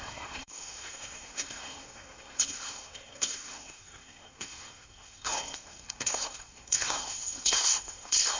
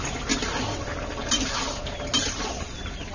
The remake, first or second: first